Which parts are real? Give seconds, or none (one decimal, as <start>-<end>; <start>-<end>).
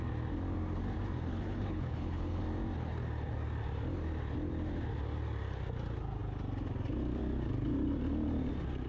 0.0-1.3; 2.4-8.9